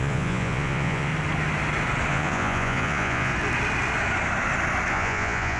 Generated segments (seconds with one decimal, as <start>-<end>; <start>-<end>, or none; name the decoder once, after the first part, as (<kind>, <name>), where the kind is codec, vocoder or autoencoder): 0.0-1.1 (vocoder, Vocos); 2.1-3.3; 4.9-5.6